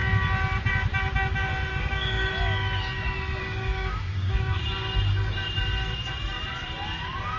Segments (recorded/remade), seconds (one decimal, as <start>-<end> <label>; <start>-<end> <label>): 0.0-1.7 recorded; 1.7-2.3 remade; 2.3-3.4 recorded; 3.4-4.6 remade; 4.6-7.4 recorded